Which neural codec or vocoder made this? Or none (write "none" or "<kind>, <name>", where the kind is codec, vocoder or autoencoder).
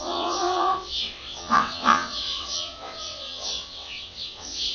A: vocoder, WaveNeXt